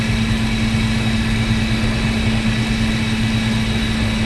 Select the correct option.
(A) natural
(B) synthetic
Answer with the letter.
A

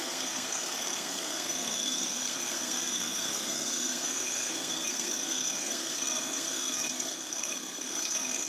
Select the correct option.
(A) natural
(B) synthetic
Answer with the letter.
B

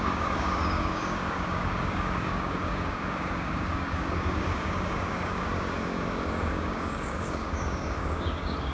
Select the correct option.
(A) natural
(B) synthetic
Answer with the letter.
B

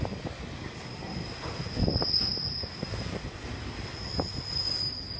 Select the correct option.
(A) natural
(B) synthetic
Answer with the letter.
A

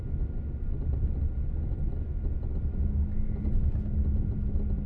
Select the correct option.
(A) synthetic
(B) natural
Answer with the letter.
B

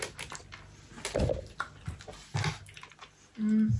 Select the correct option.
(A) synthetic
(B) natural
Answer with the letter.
B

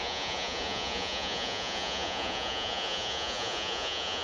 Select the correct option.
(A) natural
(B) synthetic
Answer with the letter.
B